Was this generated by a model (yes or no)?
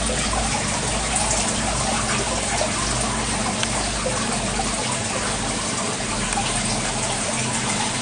no